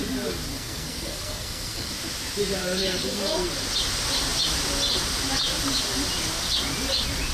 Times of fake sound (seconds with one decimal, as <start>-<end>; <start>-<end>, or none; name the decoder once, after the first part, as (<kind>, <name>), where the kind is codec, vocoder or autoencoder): 0.5-1.9 (codec, SNAC); 2.6-3.5

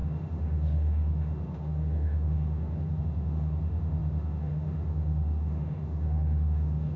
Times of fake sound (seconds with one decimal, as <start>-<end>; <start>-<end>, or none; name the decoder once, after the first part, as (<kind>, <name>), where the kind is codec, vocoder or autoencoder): 0.0-7.0 (autoencoder, DAC-VAE)

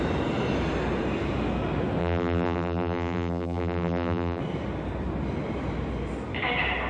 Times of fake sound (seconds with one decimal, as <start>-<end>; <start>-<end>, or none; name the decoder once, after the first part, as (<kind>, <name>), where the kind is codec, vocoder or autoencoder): 2.0-4.4 (vocoder, BigVGAN v2)